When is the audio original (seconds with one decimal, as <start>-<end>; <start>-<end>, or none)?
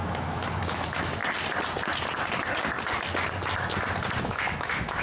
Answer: 1.2-4.2